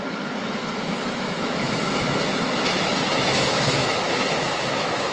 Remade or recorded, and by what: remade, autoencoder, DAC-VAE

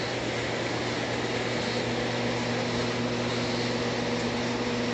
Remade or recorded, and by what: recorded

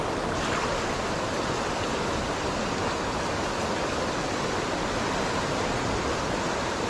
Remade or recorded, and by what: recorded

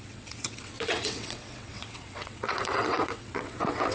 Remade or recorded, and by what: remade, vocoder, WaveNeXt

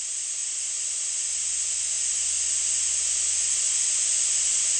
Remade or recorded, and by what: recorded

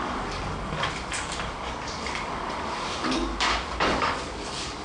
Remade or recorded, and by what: remade, codec, DAC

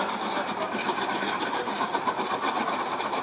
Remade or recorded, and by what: remade, vocoder, BigVGAN v2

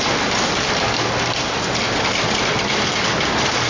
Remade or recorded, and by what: recorded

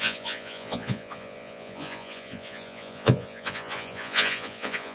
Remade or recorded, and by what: remade, vocoder, Vocos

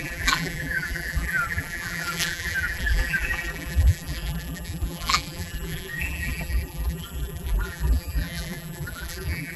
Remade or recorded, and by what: remade, vocoder, BigVGAN v2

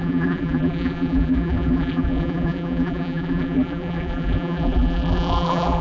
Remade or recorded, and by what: remade, vocoder, BigVGAN v2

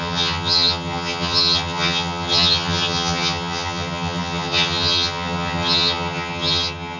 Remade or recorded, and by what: remade, vocoder, HiFi-GAN